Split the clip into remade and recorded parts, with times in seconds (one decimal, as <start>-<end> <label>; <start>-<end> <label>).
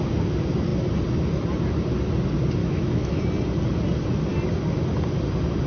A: 0.0-2.6 recorded; 2.6-3.2 remade; 3.2-5.7 recorded